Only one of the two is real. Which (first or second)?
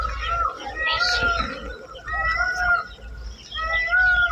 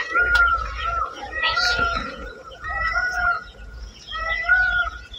first